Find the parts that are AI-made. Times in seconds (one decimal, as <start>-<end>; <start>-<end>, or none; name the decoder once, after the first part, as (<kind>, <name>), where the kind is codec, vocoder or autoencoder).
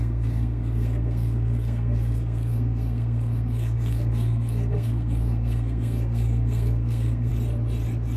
0.0-7.3 (codec, SNAC)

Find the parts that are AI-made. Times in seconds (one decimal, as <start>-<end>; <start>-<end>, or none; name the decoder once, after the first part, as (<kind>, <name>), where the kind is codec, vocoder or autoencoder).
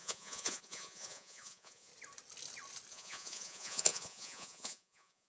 0.0-1.9 (vocoder, Vocos); 2.9-5.3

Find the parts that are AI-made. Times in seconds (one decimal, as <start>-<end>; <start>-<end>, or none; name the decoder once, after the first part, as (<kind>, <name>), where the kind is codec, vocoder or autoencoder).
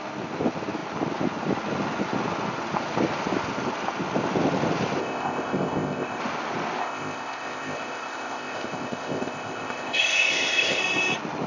5.0-6.2 (codec, ZipCodec); 6.8-10.8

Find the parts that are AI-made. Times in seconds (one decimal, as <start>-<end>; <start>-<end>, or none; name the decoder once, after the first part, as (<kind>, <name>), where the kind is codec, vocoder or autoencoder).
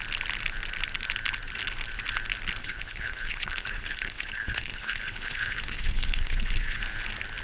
2.6-6.8 (codec, HILCodec)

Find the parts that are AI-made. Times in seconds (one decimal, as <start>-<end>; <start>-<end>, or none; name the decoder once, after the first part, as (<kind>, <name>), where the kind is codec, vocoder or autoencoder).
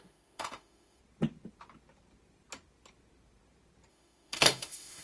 0.0-1.0 (autoencoder, DAC-VAE); 3.9-5.0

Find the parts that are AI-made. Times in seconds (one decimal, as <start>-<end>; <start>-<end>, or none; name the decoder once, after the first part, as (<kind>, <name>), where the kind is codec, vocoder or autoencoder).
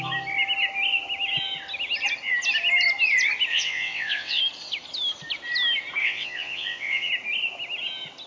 3.5-4.4 (vocoder, WaveNeXt); 6.0-7.1